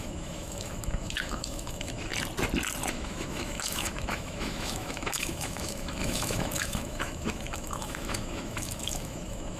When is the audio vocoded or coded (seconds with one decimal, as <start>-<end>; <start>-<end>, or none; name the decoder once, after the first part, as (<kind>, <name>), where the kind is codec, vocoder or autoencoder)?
0.0-2.1 (autoencoder, DAC-VAE); 2.9-9.6